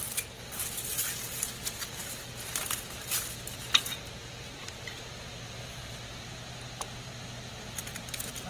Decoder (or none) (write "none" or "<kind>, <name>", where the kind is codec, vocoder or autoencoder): vocoder, BigVGAN v2